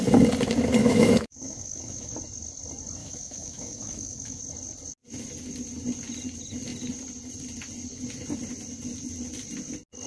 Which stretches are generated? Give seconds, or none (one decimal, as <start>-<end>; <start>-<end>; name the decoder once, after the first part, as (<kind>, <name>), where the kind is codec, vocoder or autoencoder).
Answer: 0.8-2.1 (autoencoder, DAC-VAE); 3.0-4.4